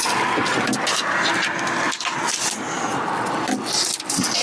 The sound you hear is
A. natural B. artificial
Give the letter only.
A